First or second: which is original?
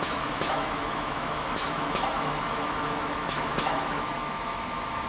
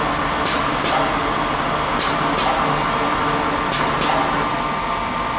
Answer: second